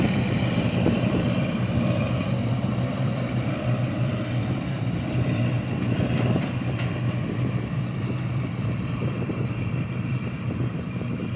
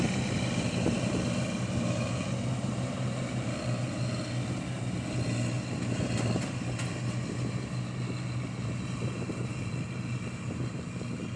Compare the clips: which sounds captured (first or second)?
second